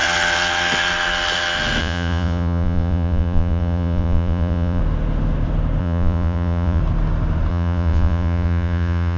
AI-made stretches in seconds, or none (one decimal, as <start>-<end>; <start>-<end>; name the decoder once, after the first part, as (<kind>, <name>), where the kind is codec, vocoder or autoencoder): 1.8-4.8 (vocoder, Vocos); 5.8-6.8; 7.5-9.2